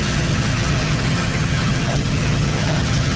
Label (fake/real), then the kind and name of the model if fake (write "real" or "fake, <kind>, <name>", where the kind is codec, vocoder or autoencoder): fake, vocoder, HiFi-GAN